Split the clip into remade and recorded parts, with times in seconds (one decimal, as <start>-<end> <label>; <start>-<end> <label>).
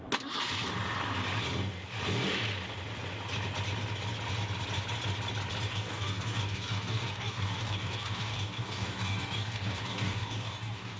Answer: 0.0-5.7 recorded; 5.7-11.0 remade